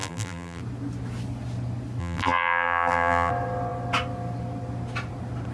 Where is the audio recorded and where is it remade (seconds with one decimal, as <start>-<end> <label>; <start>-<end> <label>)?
0.0-0.6 remade; 0.6-2.0 recorded; 2.0-3.3 remade; 3.3-5.5 recorded